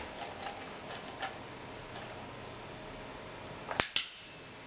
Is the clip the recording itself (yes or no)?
yes